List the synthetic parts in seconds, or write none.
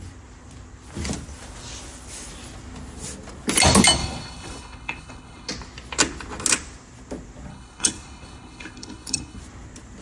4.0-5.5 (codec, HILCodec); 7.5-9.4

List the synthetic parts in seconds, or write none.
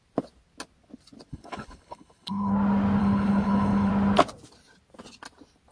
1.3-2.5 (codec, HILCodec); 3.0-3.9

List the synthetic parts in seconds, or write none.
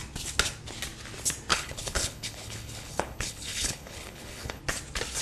1.5-4.6 (codec, HILCodec)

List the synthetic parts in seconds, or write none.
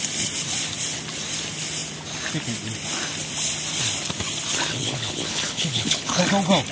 4.7-6.2 (codec, HILCodec)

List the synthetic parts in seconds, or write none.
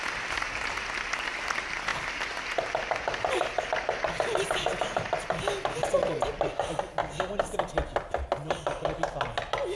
none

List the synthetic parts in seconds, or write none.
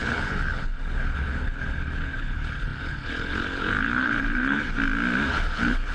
0.0-4.8 (codec, HILCodec); 5.3-5.9